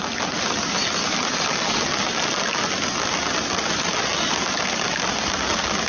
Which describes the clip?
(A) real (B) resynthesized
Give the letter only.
A